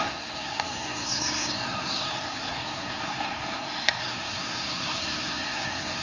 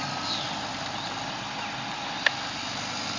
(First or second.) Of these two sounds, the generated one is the first